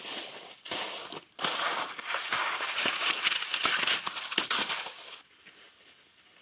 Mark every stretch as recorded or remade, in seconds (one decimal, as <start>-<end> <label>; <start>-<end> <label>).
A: 0.0-2.4 recorded; 2.4-3.0 remade; 3.0-6.4 recorded